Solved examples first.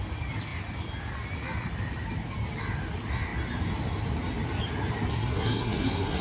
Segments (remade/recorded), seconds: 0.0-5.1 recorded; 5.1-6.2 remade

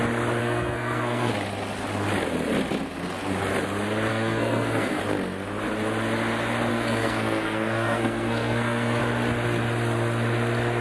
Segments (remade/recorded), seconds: 0.0-0.4 recorded; 0.4-1.3 remade; 1.3-4.1 recorded; 4.1-5.0 remade; 5.0-6.7 recorded; 6.7-9.0 remade; 9.0-10.8 recorded

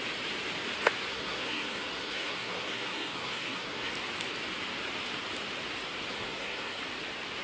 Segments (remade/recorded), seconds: 0.0-1.1 recorded; 1.1-3.9 remade; 3.9-6.1 recorded; 6.1-6.8 remade; 6.8-7.4 recorded

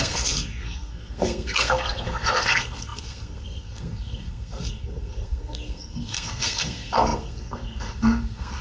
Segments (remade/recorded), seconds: 0.0-8.6 remade

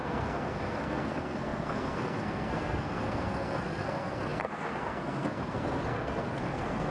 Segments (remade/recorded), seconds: 0.0-6.9 remade